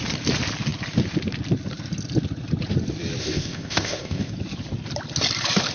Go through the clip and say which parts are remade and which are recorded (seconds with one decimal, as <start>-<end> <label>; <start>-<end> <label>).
0.0-3.2 recorded; 3.2-4.3 remade; 4.3-5.7 recorded